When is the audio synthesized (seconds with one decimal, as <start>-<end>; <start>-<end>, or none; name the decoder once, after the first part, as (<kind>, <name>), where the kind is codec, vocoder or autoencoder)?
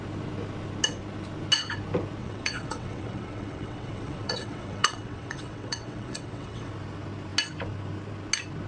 2.2-6.7 (vocoder, WaveNeXt)